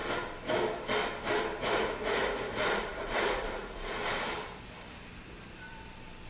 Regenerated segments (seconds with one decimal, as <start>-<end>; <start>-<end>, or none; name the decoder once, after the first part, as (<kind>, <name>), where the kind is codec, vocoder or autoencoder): 1.6-4.0 (vocoder, Vocos)